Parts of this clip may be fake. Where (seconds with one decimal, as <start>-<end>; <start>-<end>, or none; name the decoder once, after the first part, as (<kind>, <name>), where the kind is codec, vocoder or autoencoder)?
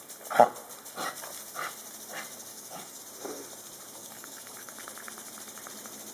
2.5-3.0 (codec, DAC); 4.0-4.8